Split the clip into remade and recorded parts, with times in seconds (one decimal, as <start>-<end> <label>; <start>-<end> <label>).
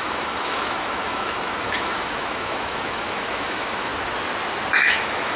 0.0-3.9 remade; 3.9-4.7 recorded; 4.7-5.4 remade